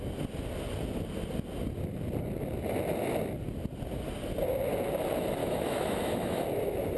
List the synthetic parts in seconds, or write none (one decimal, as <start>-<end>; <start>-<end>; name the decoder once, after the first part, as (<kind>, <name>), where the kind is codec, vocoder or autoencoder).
5.4-6.4 (autoencoder, DAC-VAE)